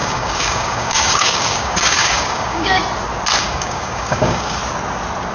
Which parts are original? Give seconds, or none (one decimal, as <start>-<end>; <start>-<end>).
2.8-3.4; 4.6-5.3

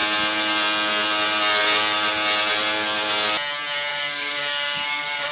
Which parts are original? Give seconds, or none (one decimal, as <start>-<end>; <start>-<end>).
0.0-3.9